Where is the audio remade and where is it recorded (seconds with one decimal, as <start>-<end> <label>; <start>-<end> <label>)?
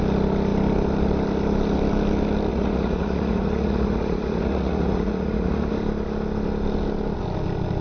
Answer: 0.0-2.5 recorded; 2.5-5.7 remade; 5.7-7.8 recorded